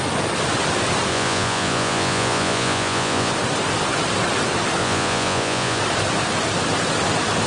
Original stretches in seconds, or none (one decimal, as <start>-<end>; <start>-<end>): 0.0-1.1; 3.3-4.8; 5.8-7.5